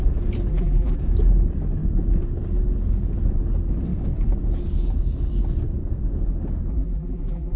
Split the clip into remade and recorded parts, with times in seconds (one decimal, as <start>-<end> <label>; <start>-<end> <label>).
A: 0.0-0.5 recorded; 0.5-1.0 remade; 1.0-6.7 recorded; 6.7-7.6 remade